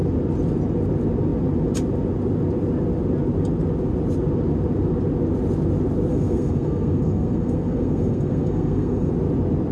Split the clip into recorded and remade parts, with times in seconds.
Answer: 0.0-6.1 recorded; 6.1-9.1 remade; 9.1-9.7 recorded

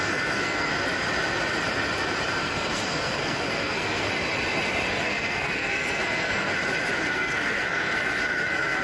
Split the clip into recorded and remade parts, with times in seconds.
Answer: 0.0-0.7 remade; 0.7-2.4 recorded; 2.4-4.1 remade; 4.1-4.9 recorded; 4.9-6.5 remade; 6.5-7.1 recorded; 7.1-8.8 remade

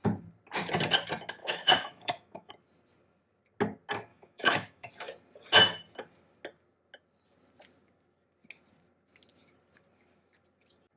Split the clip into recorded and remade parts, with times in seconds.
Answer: 0.0-1.4 recorded; 1.4-2.5 remade; 2.5-4.1 recorded; 4.1-4.9 remade; 4.9-11.0 recorded